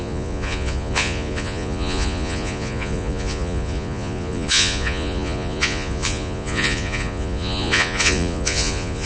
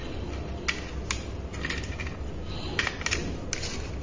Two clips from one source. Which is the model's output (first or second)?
first